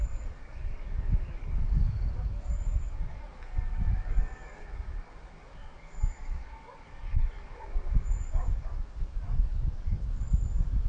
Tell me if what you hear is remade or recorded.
remade